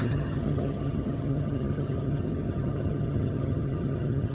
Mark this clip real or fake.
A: fake